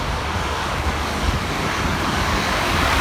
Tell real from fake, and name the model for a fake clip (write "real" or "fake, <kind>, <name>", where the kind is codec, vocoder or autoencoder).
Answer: fake, codec, DAC